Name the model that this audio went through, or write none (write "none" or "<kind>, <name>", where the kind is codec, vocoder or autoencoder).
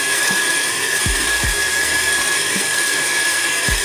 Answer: codec, SNAC